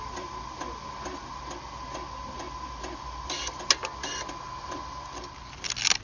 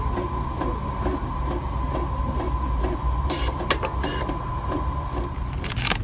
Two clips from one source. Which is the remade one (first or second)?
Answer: second